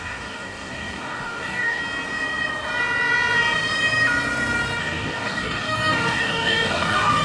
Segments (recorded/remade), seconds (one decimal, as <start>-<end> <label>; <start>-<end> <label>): 0.0-1.8 remade; 1.8-4.8 recorded; 4.8-7.2 remade

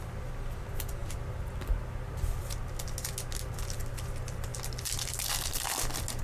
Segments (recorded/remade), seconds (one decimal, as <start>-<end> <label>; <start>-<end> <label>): 0.0-6.2 recorded

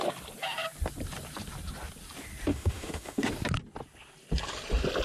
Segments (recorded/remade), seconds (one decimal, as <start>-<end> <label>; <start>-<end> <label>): 0.0-2.5 recorded; 2.5-3.3 remade; 3.3-5.0 recorded